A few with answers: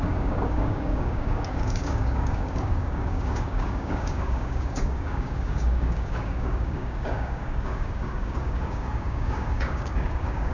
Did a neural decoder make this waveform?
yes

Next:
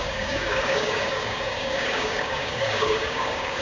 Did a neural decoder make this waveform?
yes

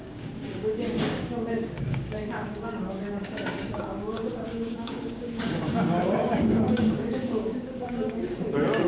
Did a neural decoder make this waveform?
yes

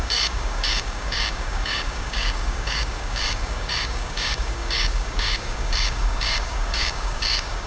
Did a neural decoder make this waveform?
yes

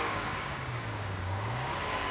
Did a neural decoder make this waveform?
yes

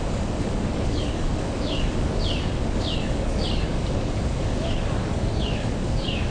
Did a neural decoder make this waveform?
yes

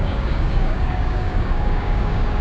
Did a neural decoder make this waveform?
yes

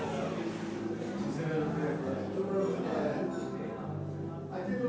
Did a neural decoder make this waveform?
no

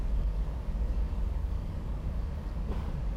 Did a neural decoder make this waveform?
yes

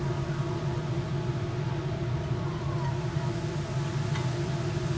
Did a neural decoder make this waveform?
no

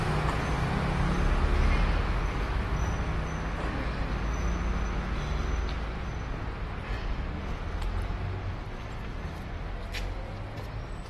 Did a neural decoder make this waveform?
no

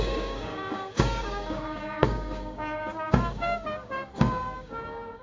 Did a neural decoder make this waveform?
yes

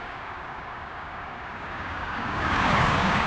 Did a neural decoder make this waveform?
yes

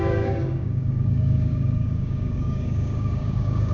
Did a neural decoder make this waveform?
yes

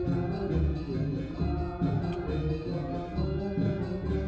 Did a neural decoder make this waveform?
no